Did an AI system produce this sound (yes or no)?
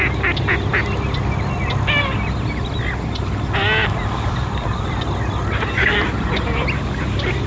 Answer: no